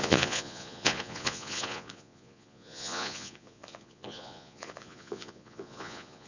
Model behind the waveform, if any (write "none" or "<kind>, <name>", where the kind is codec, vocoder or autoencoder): vocoder, Vocos